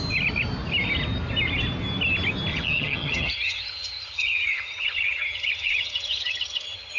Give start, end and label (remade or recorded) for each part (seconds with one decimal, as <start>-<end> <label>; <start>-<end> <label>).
0.0-2.5 recorded; 2.5-7.0 remade